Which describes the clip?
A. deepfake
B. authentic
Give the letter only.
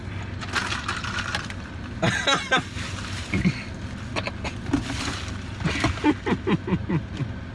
B